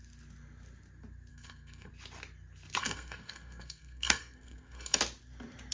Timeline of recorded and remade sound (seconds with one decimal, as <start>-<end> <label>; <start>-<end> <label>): 0.0-1.3 recorded; 1.3-1.9 remade; 1.9-2.8 recorded; 2.8-5.0 remade; 5.0-5.7 recorded